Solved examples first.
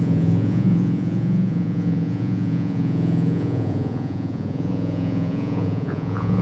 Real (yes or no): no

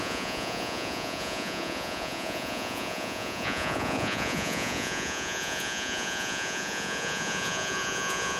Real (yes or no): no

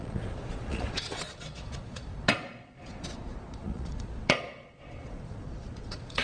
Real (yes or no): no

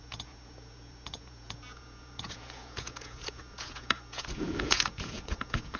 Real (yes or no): no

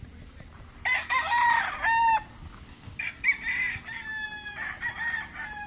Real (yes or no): yes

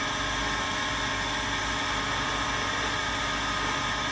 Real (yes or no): yes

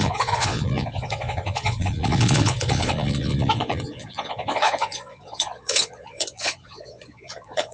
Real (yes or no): no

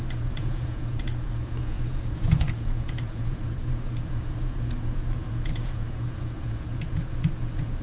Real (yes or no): no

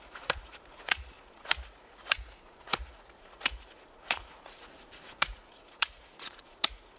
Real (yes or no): no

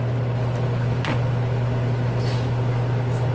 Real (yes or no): yes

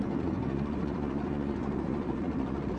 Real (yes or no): no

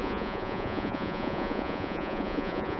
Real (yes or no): no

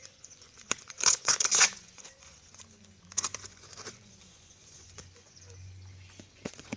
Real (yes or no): no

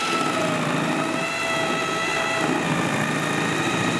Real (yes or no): yes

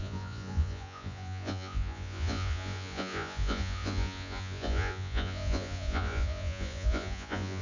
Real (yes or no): no